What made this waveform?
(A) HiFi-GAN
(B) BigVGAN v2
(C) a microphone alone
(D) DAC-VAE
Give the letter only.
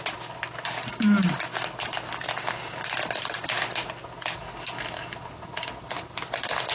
C